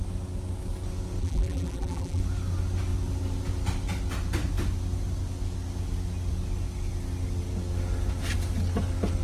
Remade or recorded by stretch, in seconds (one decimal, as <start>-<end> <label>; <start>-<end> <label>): 0.0-1.2 recorded; 1.2-2.2 remade; 2.2-9.2 recorded